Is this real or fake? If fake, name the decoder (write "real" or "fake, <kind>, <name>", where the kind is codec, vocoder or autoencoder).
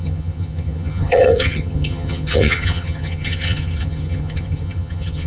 fake, vocoder, HiFi-GAN